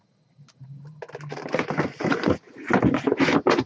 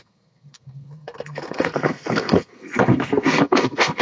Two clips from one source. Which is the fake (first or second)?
second